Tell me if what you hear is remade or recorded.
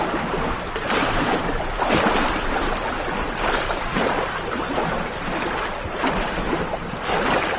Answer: recorded